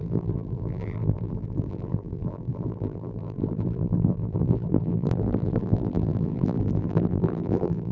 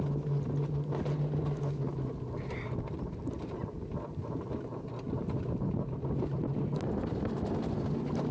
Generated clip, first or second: first